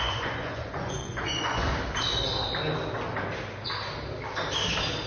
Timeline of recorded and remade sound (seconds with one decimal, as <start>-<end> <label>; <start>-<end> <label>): 0.0-1.7 remade; 1.7-5.1 recorded